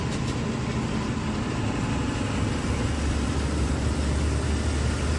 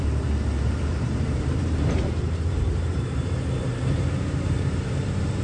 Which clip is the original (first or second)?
first